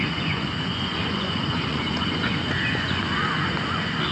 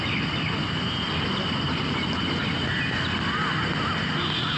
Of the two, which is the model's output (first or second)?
first